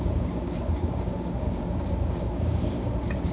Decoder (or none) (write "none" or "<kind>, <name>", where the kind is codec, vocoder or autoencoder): codec, DAC